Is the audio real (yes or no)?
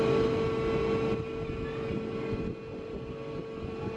yes